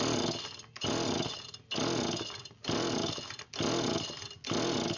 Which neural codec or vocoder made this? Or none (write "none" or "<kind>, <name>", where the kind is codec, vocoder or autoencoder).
none